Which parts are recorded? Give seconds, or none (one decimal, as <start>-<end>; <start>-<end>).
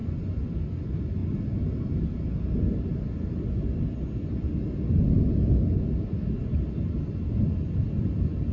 0.0-8.5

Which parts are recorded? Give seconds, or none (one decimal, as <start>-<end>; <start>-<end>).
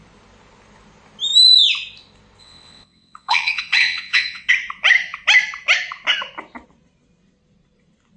0.0-2.4; 4.5-8.2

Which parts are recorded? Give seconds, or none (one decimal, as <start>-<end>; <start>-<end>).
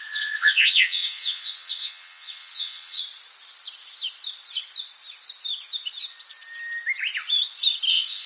3.0-7.9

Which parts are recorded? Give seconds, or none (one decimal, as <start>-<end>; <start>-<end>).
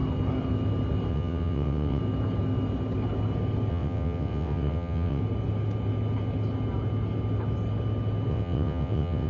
0.0-1.1; 2.0-3.7; 5.2-8.3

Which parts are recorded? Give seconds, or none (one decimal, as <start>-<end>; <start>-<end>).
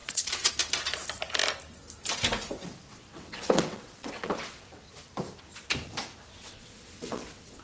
0.5-2.9; 4.9-6.3